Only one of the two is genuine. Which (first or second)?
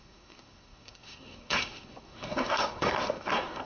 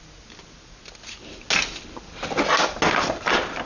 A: second